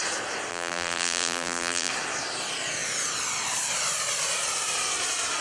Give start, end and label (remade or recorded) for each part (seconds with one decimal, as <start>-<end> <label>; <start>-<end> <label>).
0.0-0.5 recorded; 0.5-1.9 remade; 1.9-5.4 recorded